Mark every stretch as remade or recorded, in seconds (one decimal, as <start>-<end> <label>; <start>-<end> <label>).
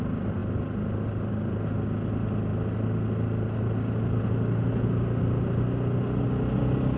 0.0-7.0 recorded